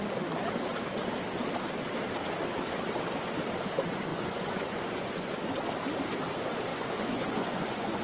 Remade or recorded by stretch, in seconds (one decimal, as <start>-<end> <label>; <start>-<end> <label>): 0.0-4.1 recorded; 4.1-5.4 remade; 5.4-6.7 recorded; 6.7-8.0 remade